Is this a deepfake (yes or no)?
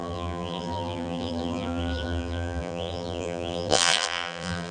yes